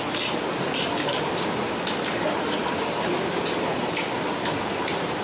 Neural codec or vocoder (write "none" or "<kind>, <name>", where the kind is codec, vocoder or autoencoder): vocoder, BigVGAN v2